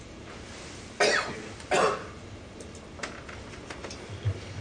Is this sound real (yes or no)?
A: yes